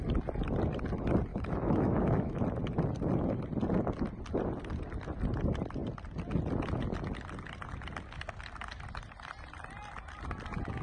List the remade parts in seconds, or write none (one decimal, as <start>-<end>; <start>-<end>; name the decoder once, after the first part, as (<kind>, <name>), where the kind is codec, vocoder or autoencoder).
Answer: 1.3-2.4 (autoencoder, DAC-VAE)